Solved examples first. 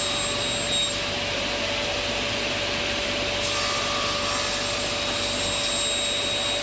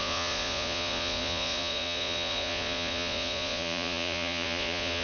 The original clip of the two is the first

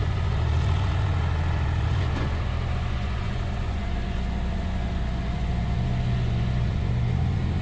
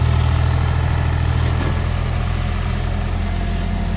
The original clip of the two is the second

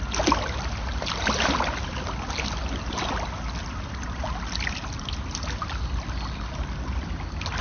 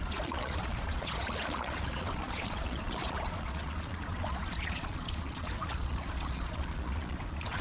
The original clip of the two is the first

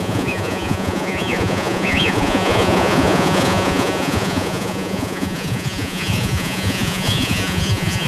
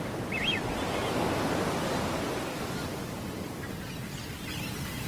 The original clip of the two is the second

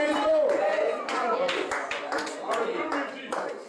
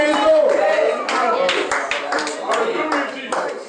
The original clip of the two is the second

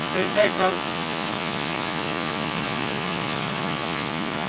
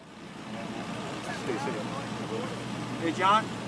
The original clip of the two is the second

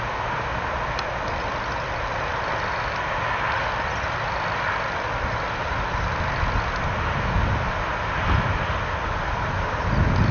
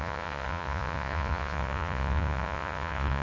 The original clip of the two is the first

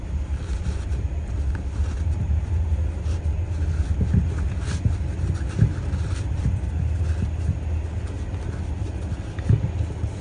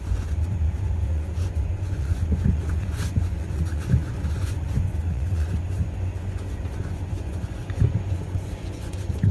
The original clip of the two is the first